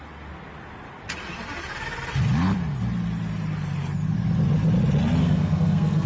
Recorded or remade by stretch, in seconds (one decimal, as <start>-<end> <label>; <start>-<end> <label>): 0.0-5.2 recorded; 5.2-6.1 remade